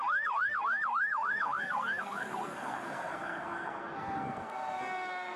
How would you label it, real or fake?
fake